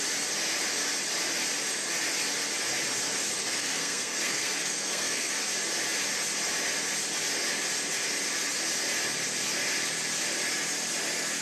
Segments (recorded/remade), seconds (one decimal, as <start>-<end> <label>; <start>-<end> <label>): 0.0-3.4 recorded; 3.4-5.3 remade; 5.3-11.4 recorded